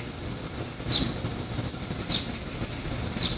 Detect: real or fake real